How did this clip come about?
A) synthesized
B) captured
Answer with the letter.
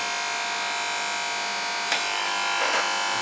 B